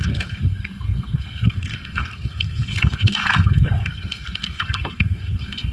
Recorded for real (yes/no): no